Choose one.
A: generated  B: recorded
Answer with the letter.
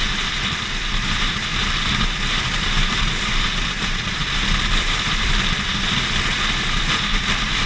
A